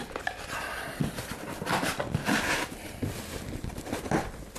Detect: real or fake real